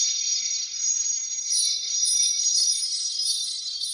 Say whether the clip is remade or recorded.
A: remade